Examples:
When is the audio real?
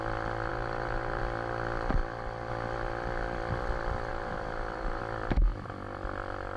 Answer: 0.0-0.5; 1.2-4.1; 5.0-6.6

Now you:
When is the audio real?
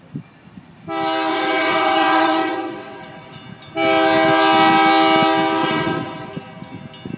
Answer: 0.0-1.3; 3.4-5.6; 6.3-7.2